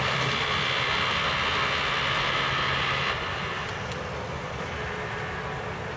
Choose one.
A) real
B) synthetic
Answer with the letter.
A